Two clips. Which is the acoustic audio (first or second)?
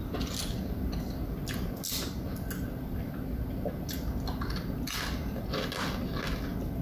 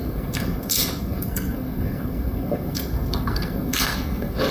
first